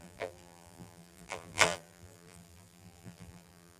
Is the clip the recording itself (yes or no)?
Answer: no